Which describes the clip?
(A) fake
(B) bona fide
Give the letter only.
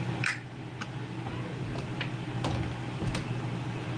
B